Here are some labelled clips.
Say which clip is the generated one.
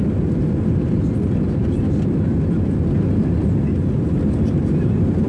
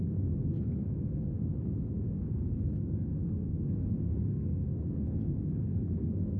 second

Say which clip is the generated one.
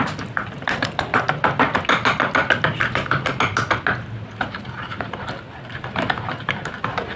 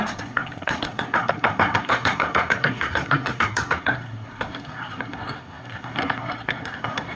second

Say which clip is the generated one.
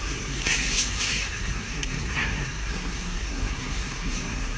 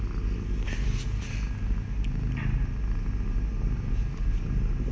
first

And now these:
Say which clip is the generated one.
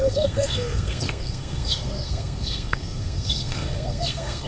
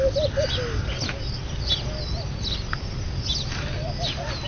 first